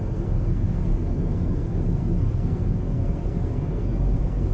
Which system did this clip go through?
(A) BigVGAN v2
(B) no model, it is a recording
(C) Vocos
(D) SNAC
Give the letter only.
D